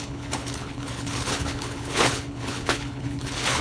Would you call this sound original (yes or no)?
no